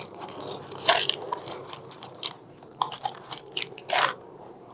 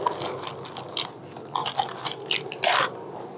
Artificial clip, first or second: first